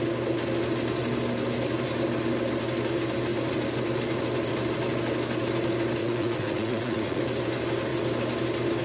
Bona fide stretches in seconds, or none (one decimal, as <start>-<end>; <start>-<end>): 0.0-6.0; 7.2-8.8